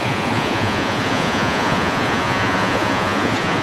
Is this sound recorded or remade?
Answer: remade